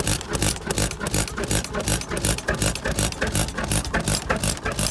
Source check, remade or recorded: recorded